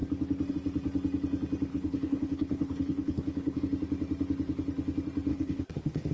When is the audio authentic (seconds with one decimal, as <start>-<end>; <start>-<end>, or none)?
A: 0.0-1.7; 3.6-5.3